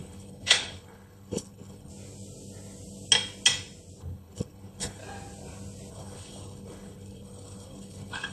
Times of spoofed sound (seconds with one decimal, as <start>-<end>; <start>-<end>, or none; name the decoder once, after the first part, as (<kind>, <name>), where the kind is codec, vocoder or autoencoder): 0.0-1.9 (codec, HILCodec); 4.0-5.0; 5.9-8.3